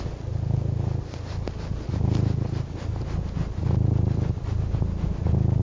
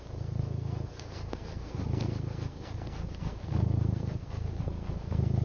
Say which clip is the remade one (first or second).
second